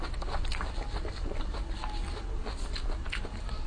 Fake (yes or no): no